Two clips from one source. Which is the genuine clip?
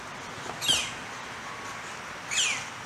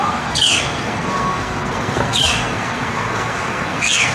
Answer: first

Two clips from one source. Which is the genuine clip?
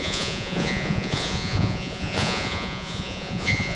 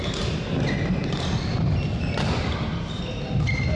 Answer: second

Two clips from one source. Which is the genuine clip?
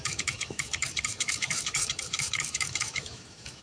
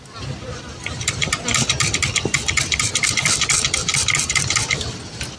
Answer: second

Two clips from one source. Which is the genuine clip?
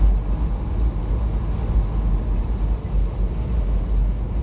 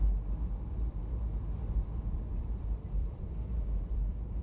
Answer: first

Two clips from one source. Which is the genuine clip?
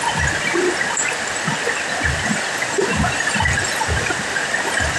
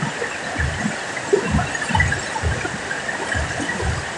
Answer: first